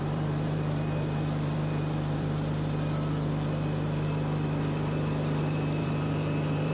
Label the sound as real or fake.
fake